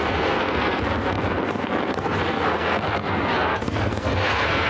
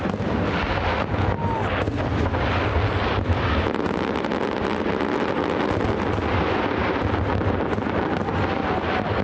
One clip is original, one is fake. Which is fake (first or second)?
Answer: first